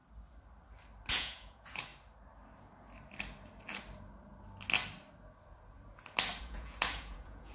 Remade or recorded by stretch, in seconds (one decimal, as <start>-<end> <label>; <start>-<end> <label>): 0.0-1.1 recorded; 1.1-1.9 remade; 1.9-6.4 recorded; 6.4-7.5 remade